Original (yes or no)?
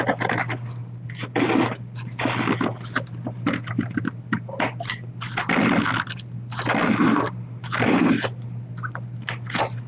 yes